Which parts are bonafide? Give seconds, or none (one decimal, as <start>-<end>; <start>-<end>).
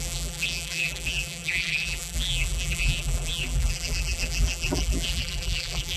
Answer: none